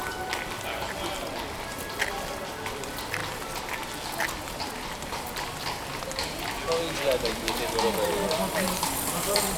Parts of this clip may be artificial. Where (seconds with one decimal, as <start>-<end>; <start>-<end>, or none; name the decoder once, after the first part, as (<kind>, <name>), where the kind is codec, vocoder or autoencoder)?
none